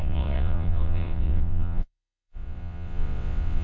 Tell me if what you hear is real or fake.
fake